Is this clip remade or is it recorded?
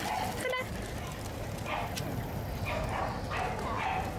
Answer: recorded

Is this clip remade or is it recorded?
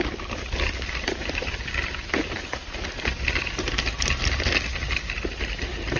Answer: recorded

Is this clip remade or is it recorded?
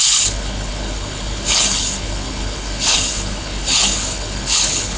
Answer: remade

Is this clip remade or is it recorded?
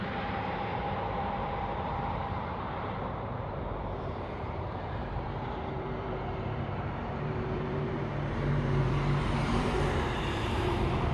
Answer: remade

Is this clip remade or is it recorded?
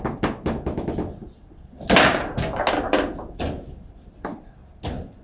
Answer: recorded